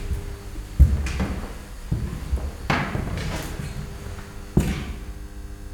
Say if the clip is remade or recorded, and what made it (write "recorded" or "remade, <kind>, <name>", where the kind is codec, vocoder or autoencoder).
recorded